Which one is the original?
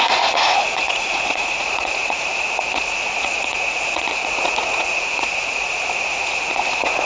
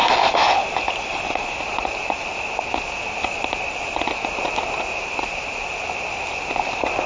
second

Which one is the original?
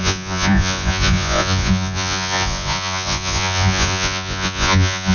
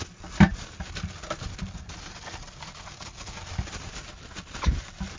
second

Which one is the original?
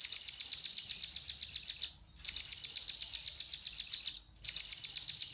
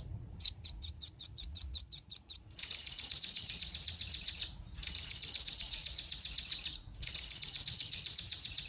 first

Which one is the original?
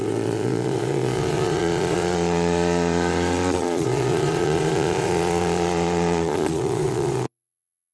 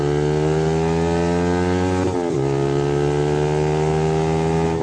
second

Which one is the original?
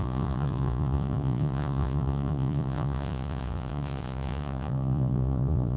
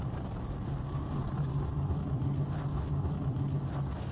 second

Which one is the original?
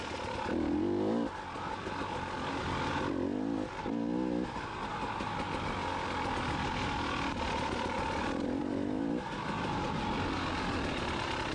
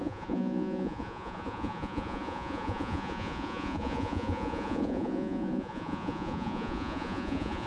first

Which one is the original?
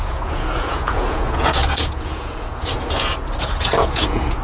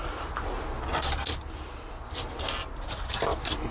second